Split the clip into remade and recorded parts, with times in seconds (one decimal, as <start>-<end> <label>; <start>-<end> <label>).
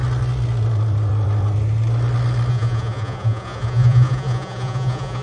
0.0-2.5 recorded; 2.5-5.2 remade